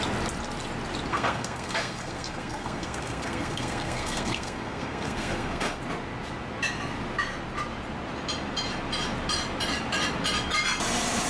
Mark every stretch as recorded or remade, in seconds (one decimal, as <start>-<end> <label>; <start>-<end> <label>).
0.0-1.1 recorded; 1.1-5.8 remade; 5.8-11.3 recorded